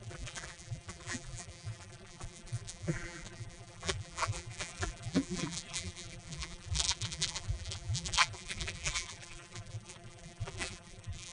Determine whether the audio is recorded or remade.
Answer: remade